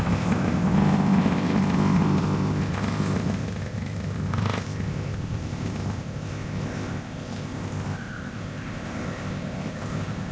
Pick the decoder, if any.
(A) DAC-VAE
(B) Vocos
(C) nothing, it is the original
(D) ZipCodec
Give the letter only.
D